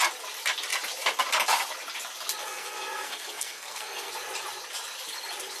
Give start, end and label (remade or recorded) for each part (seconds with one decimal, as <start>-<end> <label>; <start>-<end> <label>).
0.0-2.4 recorded; 2.4-4.1 remade; 4.1-5.6 recorded